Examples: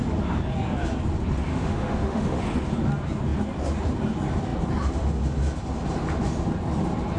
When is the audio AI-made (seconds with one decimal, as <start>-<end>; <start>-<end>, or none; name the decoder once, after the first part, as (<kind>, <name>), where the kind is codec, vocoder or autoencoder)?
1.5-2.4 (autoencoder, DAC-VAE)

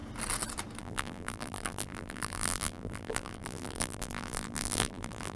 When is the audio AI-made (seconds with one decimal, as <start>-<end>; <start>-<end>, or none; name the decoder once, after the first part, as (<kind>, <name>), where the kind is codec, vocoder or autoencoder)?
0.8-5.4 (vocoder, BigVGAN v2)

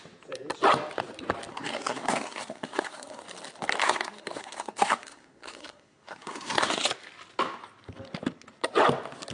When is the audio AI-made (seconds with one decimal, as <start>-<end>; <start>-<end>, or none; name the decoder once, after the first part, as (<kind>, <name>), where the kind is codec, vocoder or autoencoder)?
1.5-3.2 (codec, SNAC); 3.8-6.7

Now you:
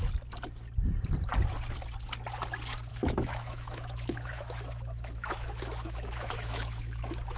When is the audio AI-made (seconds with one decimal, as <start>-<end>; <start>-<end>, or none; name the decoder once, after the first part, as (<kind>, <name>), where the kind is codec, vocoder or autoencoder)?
2.9-7.4 (autoencoder, DAC-VAE)

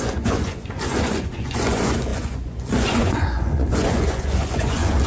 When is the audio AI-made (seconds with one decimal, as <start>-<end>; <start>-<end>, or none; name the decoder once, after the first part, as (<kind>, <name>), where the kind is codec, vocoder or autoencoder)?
0.0-5.1 (vocoder, Vocos)

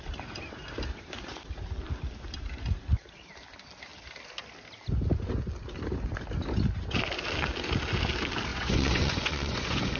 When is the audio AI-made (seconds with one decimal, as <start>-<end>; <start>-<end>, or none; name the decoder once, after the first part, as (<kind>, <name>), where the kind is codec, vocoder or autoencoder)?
8.5-10.0 (vocoder, Vocos)

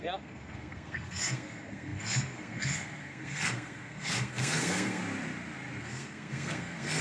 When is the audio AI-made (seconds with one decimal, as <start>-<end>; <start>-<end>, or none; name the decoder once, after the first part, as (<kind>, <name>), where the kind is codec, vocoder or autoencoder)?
0.0-5.0 (codec, SNAC); 5.8-7.0

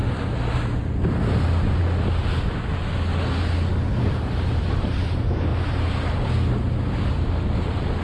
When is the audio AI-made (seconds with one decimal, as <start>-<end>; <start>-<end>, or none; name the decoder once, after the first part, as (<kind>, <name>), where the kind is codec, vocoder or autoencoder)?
none